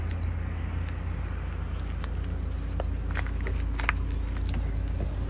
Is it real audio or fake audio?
real